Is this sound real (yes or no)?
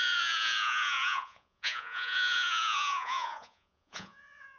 no